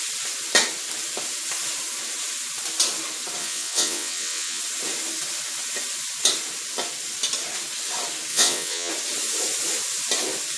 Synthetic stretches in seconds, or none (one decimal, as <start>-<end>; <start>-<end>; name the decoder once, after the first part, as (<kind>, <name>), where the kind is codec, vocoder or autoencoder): 3.4-4.6 (vocoder, WaveNeXt); 8.3-8.9